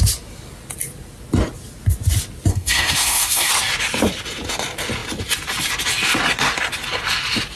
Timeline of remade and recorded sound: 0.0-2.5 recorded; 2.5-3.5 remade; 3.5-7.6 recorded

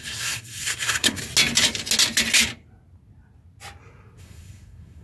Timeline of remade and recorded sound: 0.0-1.2 remade; 1.2-4.2 recorded; 4.2-5.0 remade